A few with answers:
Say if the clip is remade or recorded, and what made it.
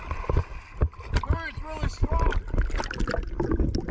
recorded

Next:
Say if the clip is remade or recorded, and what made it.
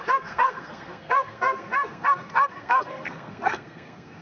remade, codec, SNAC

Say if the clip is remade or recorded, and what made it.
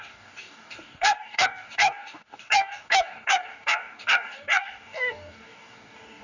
remade, codec, DAC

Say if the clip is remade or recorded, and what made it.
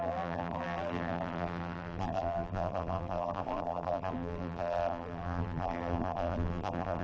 remade, vocoder, BigVGAN v2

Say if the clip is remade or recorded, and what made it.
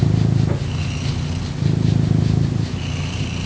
recorded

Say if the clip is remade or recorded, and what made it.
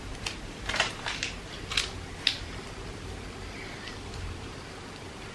recorded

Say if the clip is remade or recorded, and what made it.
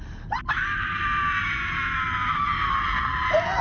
recorded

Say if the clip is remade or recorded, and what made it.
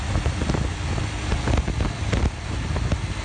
recorded